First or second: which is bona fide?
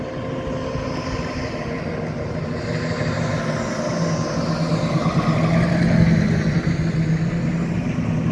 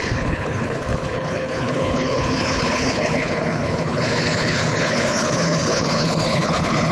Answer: first